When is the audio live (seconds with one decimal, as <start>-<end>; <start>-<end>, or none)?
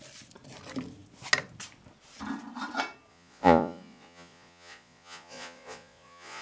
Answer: 0.0-3.1